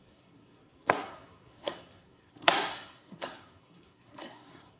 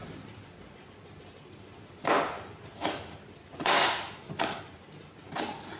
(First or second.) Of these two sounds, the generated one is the first